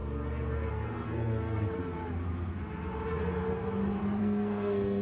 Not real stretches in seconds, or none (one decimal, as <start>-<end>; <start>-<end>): 0.7-1.8; 4.2-5.0